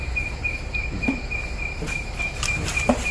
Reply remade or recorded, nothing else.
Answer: remade